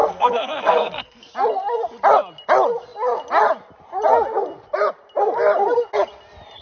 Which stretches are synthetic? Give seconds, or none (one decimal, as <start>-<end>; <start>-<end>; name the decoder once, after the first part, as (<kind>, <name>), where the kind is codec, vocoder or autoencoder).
0.0-1.3 (codec, SNAC)